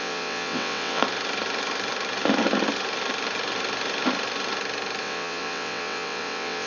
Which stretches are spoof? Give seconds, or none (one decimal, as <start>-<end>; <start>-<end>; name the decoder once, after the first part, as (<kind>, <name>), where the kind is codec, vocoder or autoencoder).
0.0-1.0 (vocoder, WaveNeXt); 5.0-6.7